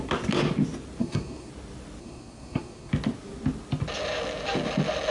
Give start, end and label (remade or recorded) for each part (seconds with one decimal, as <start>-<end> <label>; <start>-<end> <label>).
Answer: 0.0-1.0 recorded; 1.0-1.5 remade; 1.5-2.0 recorded; 2.0-2.9 remade; 2.9-5.1 recorded